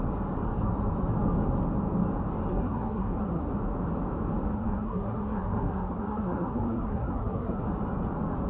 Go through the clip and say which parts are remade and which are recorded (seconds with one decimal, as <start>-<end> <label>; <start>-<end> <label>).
0.0-2.5 recorded; 2.5-3.5 remade; 3.5-4.5 recorded; 4.5-7.7 remade; 7.7-8.5 recorded